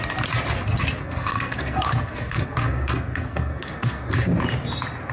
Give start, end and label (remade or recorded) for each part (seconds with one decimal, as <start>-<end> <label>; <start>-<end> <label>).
0.0-1.0 recorded; 1.0-4.1 remade; 4.1-5.1 recorded